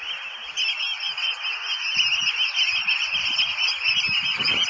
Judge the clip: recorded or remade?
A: recorded